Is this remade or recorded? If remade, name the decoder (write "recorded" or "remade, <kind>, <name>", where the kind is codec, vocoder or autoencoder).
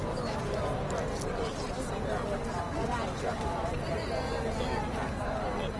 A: recorded